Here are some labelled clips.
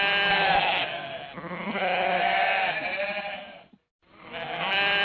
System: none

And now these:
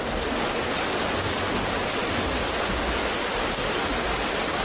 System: none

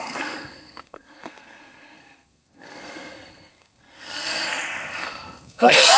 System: codec, SNAC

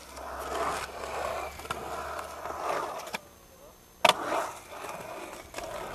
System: none